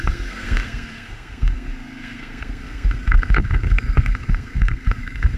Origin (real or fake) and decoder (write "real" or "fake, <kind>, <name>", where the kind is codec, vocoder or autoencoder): fake, codec, SNAC